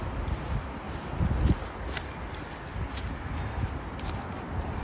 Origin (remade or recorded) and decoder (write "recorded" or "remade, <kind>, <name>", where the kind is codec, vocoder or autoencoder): recorded